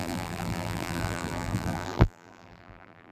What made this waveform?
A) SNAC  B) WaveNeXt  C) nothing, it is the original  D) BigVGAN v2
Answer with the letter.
D